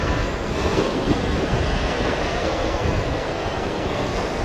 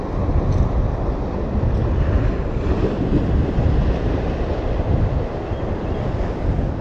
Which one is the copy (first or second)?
first